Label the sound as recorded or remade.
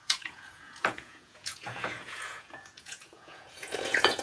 remade